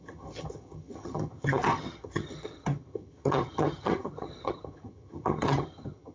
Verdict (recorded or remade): remade